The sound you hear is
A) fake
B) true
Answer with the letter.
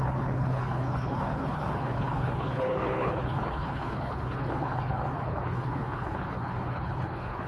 A